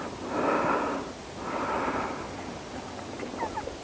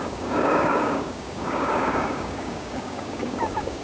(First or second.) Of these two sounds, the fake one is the second